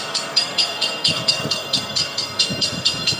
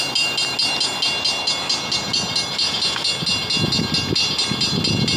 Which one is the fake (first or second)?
first